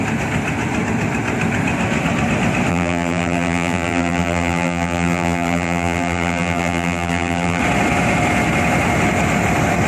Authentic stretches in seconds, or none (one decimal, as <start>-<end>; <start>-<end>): 0.0-2.7; 7.6-9.9